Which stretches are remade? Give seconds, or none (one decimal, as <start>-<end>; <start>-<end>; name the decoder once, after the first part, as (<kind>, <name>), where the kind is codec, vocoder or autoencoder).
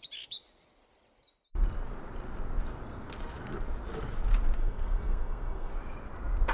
4.6-5.7 (codec, SNAC)